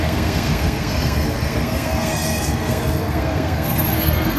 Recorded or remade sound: remade